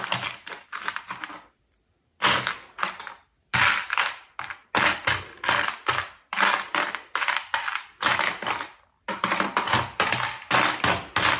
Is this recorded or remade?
recorded